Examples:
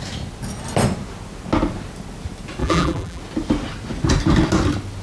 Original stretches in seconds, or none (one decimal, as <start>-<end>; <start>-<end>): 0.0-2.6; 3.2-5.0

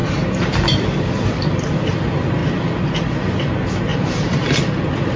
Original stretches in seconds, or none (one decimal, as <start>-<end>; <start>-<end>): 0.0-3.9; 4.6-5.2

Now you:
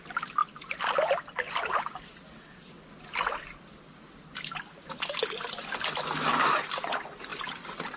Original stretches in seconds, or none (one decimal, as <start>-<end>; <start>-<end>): 0.0-7.3

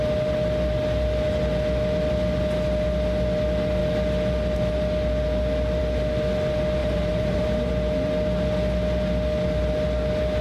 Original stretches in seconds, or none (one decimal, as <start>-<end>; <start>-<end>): 0.0-6.8; 7.7-10.4

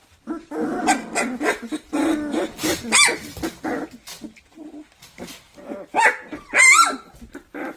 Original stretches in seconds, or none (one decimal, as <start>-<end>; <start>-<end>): 0.0-7.8